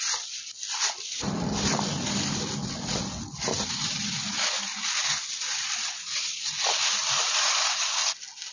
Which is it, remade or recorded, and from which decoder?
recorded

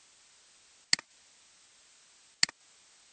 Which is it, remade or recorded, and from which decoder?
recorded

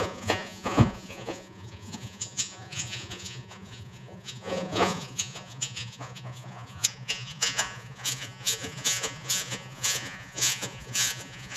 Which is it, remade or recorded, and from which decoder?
remade, vocoder, Vocos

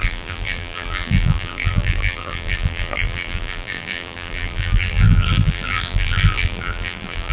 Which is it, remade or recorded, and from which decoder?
remade, vocoder, BigVGAN v2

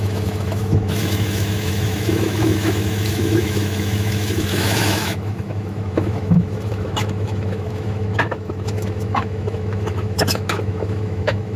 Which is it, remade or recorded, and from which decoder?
remade, autoencoder, DAC-VAE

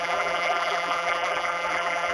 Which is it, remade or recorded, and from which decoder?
remade, vocoder, BigVGAN v2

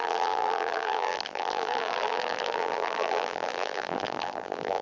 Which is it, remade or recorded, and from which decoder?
remade, vocoder, BigVGAN v2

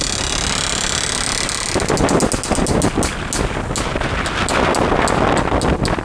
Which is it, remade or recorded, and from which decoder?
recorded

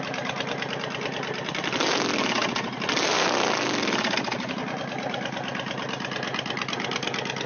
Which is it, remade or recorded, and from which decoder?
recorded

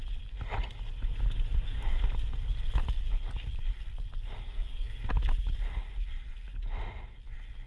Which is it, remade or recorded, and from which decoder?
recorded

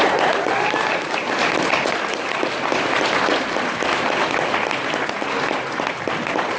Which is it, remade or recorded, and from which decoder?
recorded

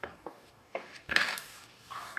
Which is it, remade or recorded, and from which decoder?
remade, codec, DAC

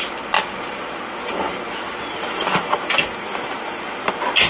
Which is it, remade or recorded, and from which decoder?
recorded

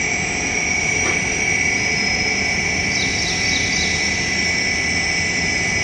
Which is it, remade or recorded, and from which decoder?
recorded